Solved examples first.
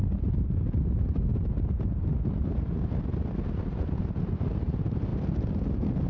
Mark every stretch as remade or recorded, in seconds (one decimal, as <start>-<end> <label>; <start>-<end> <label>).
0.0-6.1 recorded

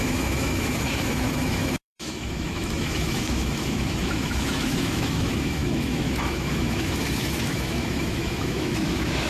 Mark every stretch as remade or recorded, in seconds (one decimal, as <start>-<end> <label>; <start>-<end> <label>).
0.0-9.3 remade

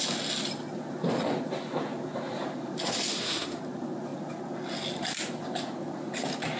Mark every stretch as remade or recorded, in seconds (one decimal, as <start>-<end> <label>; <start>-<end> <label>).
0.0-3.1 recorded; 3.1-3.6 remade; 3.6-6.6 recorded

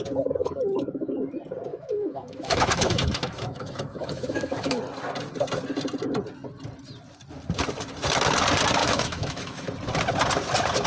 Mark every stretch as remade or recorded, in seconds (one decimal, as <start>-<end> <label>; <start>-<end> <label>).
0.0-0.4 recorded; 0.4-1.2 remade; 1.2-1.7 recorded; 1.7-4.8 remade; 4.8-8.8 recorded; 8.8-9.7 remade; 9.7-10.9 recorded

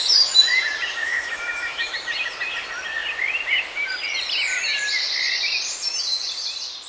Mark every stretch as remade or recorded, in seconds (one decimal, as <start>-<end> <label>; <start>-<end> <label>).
0.0-1.0 recorded; 1.0-1.9 remade; 1.9-6.9 recorded